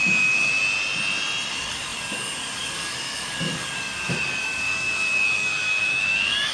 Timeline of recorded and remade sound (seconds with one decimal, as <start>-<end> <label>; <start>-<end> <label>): 0.0-0.6 remade; 0.6-1.5 recorded; 1.5-6.5 remade